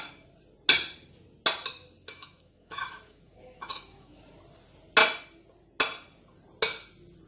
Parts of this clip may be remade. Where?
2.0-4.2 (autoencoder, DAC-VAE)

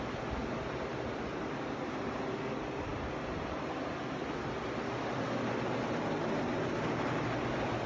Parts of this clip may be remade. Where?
none

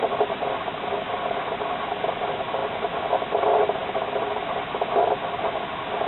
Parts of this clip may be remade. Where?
none